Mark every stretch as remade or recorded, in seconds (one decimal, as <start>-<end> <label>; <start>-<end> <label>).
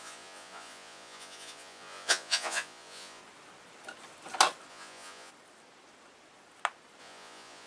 0.0-3.2 remade; 3.2-4.7 recorded; 4.7-5.3 remade; 5.3-7.0 recorded; 7.0-7.7 remade